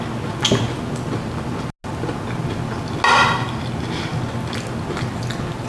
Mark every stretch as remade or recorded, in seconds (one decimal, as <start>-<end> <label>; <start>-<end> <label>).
0.0-5.7 recorded